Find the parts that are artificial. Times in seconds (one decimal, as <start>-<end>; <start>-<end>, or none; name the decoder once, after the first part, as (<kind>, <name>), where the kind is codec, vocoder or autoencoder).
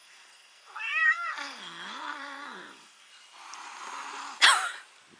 0.0-3.1 (codec, SNAC)